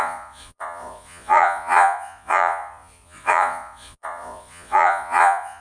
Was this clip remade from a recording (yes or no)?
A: yes